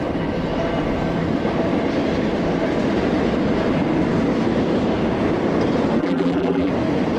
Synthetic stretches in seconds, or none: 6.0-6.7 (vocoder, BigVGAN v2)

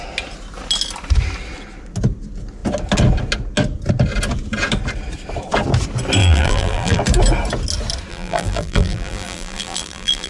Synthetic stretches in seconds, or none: 6.2-7.0 (vocoder, BigVGAN v2); 8.1-10.3